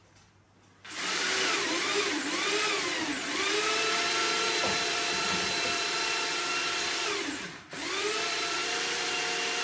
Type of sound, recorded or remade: remade